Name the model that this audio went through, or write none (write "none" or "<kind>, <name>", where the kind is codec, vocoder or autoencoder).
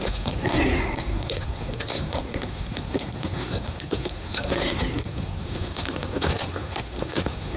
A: codec, SNAC